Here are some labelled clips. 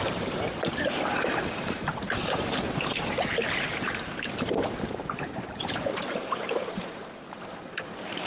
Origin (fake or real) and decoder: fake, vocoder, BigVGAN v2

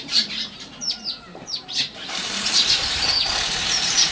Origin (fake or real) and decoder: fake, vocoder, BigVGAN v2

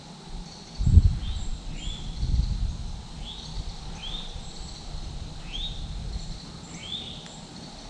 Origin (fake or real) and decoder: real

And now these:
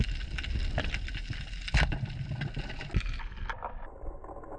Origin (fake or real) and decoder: real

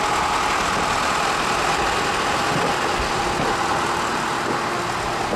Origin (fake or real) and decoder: real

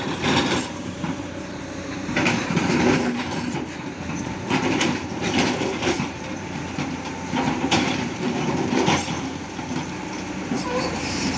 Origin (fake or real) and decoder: fake, vocoder, BigVGAN v2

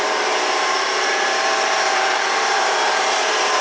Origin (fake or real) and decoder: fake, vocoder, BigVGAN v2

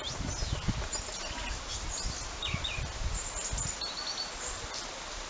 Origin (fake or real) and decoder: real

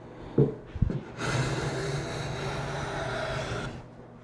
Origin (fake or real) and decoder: real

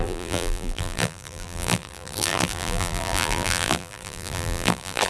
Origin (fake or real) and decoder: fake, vocoder, BigVGAN v2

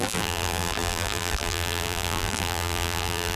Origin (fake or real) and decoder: fake, vocoder, BigVGAN v2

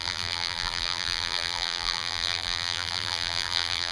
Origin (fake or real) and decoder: fake, vocoder, BigVGAN v2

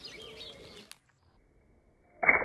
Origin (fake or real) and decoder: real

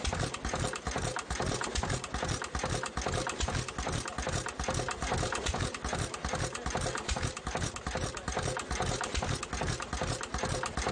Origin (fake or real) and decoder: real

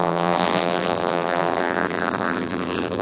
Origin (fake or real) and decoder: fake, vocoder, BigVGAN v2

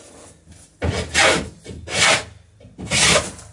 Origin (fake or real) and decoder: real